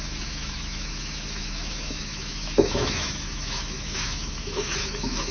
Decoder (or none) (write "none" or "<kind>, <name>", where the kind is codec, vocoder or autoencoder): autoencoder, DAC-VAE